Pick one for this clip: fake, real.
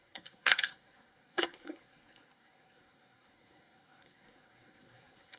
fake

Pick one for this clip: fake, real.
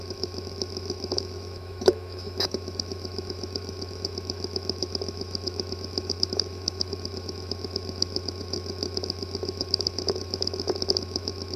fake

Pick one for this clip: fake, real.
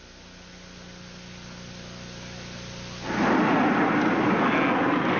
real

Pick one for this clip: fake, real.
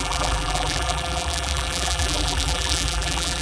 fake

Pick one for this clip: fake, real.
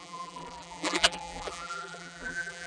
fake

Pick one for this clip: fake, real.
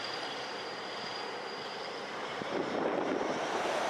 fake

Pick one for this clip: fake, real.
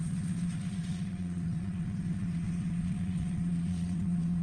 fake